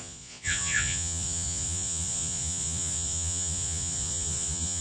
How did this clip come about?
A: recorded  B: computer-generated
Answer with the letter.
B